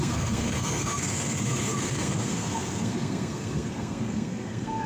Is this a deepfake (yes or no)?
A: yes